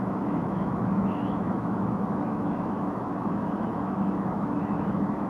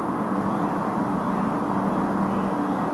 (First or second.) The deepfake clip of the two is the first